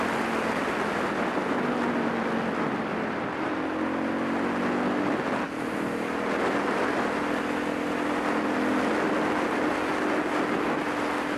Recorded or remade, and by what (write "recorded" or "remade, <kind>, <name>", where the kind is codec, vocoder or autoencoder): recorded